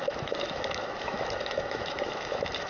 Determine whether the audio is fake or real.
fake